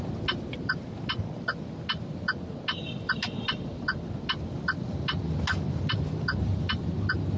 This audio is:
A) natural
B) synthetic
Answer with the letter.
A